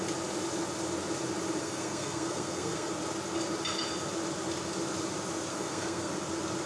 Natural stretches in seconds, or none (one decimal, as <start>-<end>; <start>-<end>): 0.0-1.6; 2.9-5.5; 6.1-6.7